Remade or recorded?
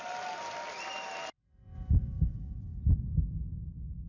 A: recorded